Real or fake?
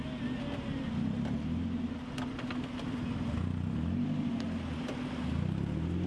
real